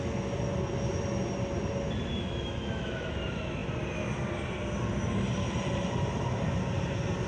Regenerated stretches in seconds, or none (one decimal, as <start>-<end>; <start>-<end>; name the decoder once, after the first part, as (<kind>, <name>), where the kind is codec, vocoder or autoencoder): 2.1-3.1 (autoencoder, DAC-VAE)